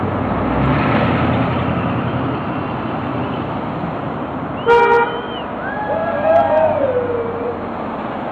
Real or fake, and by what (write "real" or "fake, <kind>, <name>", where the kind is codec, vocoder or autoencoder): real